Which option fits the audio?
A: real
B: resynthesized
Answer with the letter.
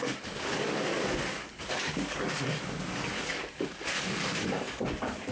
B